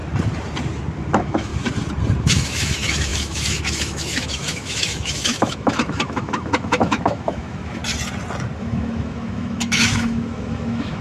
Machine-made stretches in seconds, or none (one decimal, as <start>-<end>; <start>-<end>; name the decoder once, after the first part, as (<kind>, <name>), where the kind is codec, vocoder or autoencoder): 1.1-1.5 (autoencoder, DAC-VAE); 2.2-7.8; 8.6-11.0